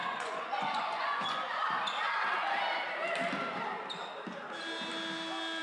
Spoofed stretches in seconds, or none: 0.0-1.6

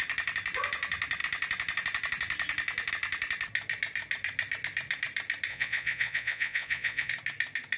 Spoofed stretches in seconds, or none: 5.5-7.1

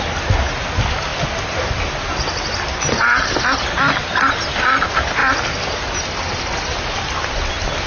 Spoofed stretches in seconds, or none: none